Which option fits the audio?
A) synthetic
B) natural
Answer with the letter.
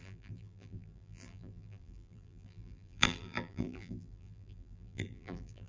A